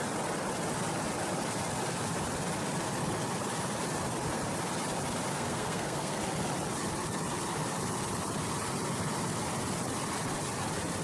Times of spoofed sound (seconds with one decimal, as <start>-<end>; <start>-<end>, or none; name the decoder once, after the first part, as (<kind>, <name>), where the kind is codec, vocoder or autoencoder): 5.3-6.2 (codec, SNAC)